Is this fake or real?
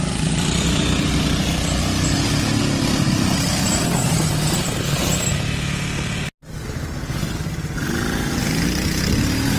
real